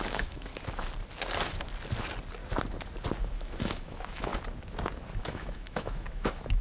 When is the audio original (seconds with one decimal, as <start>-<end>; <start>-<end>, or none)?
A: 0.5-3.2; 4.3-5.2